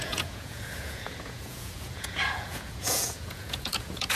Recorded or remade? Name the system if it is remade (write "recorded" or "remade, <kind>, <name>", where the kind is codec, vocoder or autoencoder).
remade, vocoder, Vocos